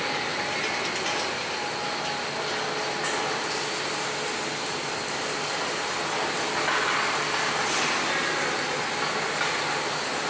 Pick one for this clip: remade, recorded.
recorded